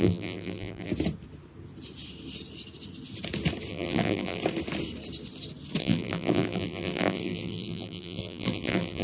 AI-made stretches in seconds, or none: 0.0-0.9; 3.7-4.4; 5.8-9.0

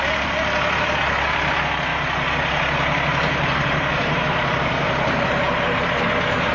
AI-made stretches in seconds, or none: 1.9-5.8

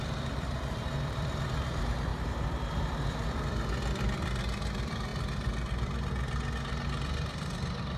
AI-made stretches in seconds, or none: 0.0-2.1; 2.7-5.1

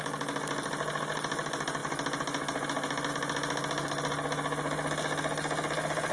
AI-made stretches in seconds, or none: none

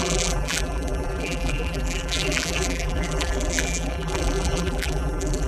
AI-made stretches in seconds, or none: 0.0-5.5

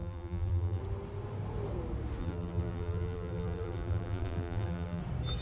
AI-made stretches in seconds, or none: 0.0-0.8; 2.2-5.0